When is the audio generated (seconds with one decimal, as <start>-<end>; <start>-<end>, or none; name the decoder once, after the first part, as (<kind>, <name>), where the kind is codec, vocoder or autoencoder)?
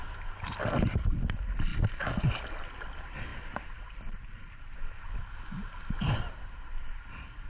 none